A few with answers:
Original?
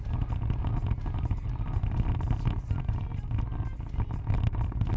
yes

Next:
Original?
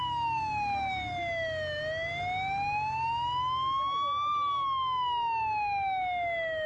yes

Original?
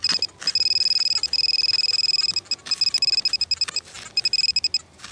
yes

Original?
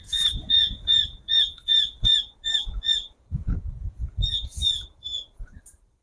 no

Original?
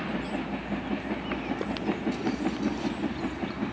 yes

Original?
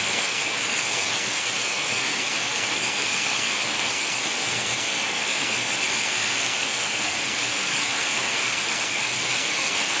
no